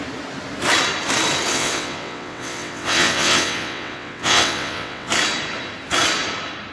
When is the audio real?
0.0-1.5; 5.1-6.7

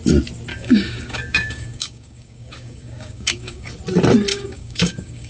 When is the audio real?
0.0-0.5; 3.7-4.3